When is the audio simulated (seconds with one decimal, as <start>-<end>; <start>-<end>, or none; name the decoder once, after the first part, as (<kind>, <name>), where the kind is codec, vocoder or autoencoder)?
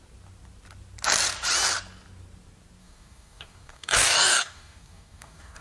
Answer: 2.8-5.6 (codec, DAC)